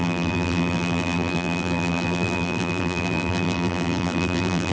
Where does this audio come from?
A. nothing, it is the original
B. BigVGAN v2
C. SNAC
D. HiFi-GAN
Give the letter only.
B